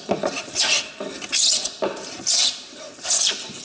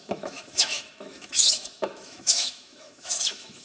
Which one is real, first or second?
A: first